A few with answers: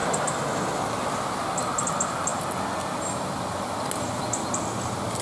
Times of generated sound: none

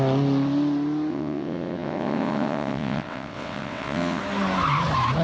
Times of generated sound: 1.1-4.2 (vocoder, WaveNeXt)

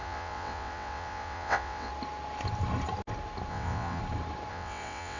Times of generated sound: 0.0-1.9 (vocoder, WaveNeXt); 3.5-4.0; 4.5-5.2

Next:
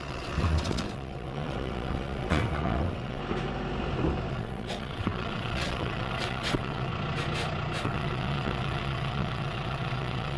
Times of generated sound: 0.0-3.2 (vocoder, WaveNeXt); 4.3-6.9; 7.8-10.4